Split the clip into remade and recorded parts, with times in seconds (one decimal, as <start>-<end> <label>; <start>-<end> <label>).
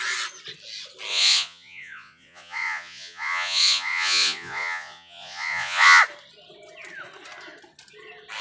0.0-1.1 recorded; 1.1-6.0 remade; 6.0-8.4 recorded